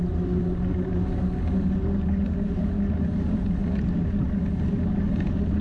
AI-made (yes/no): no